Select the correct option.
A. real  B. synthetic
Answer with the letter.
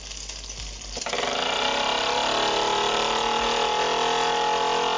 A